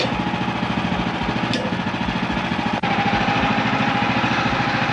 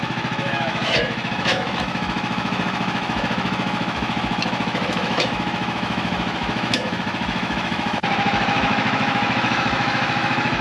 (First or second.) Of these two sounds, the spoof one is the second